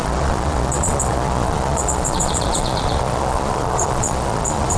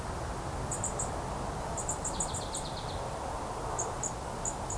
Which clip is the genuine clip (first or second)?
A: second